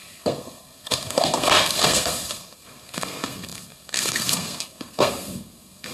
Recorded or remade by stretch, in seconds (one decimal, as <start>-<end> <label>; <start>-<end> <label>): 0.0-5.9 remade